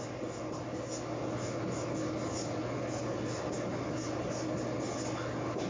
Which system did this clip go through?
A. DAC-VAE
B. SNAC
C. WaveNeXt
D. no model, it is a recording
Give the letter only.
D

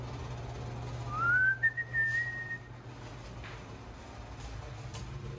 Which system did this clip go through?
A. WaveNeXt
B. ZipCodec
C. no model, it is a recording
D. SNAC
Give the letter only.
C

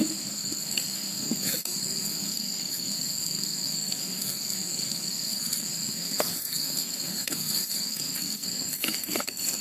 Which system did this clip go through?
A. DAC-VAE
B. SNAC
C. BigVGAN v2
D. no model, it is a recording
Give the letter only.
B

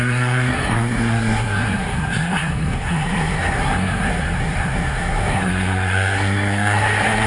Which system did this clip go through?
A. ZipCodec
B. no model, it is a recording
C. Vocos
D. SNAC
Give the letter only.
D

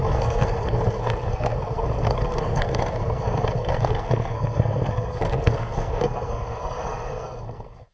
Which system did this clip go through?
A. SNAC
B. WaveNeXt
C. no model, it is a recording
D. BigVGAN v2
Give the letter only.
A